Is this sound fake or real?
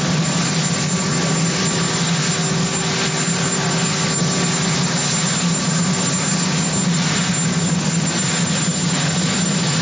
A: real